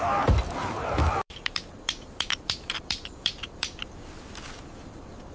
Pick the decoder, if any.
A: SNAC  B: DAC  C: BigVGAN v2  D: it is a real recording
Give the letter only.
C